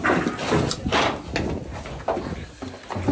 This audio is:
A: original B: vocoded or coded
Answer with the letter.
A